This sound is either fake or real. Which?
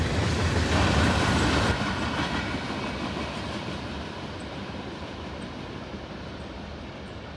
real